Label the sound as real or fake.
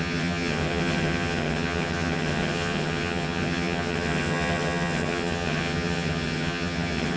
fake